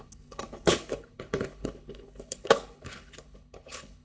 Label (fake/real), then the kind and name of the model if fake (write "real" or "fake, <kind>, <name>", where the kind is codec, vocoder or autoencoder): fake, codec, HILCodec